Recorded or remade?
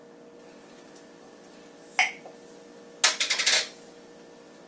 recorded